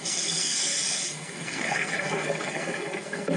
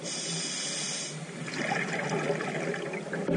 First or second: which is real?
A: second